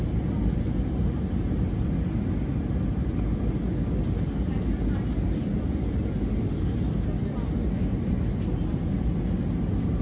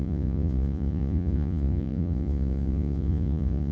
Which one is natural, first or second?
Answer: first